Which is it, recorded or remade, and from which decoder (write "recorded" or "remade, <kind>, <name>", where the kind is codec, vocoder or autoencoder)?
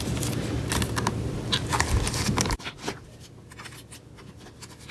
recorded